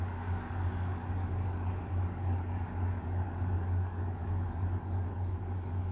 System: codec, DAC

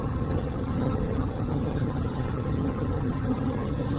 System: vocoder, HiFi-GAN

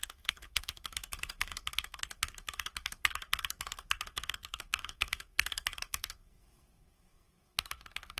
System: codec, SNAC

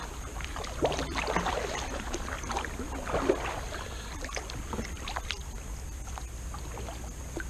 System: none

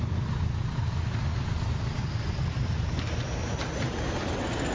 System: none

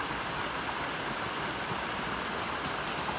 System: none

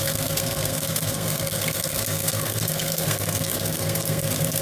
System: codec, SNAC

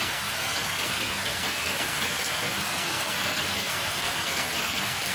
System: codec, SNAC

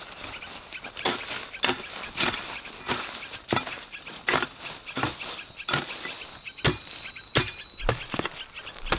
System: none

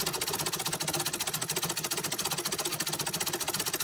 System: none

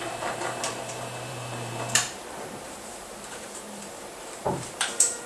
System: vocoder, BigVGAN v2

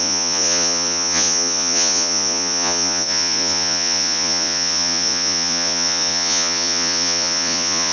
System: vocoder, Vocos